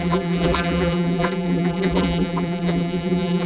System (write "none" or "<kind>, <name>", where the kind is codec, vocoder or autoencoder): vocoder, BigVGAN v2